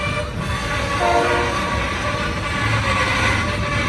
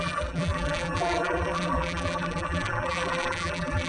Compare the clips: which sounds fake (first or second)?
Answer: second